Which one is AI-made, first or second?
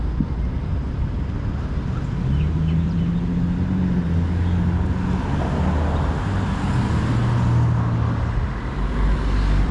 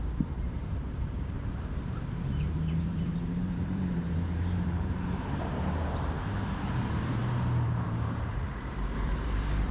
second